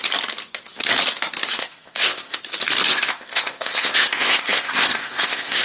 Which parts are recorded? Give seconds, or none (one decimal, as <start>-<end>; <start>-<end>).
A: 0.0-1.6; 2.4-2.9